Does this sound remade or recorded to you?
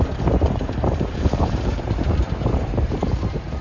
remade